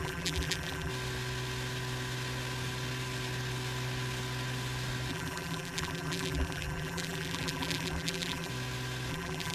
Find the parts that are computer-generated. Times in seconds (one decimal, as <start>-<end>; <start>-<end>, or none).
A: 0.0-0.9; 5.1-8.5; 9.1-9.5